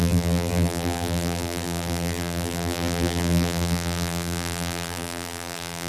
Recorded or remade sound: remade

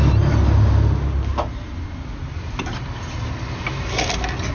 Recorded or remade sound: recorded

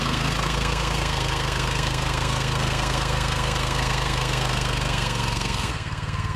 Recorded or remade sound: remade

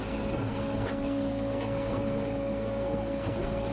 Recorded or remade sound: remade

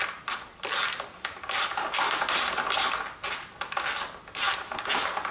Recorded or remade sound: remade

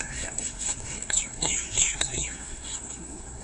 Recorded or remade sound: remade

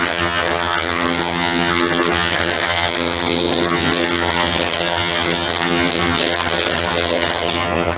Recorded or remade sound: remade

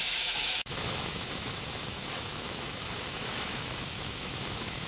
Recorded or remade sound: remade